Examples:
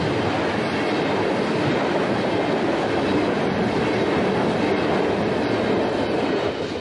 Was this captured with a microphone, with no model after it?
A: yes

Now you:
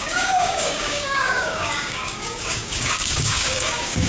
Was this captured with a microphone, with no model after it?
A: no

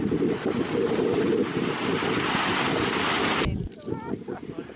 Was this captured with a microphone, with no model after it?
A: yes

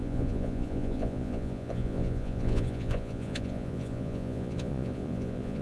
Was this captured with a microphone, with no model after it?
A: no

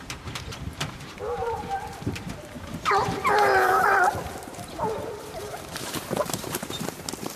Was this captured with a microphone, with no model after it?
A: no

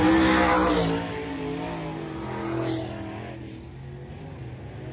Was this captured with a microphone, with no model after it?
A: yes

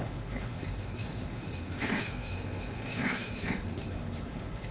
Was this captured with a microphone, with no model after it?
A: no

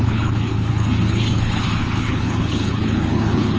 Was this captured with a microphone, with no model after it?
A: no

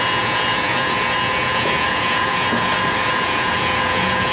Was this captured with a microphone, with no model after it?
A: no